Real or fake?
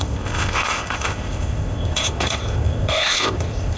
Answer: fake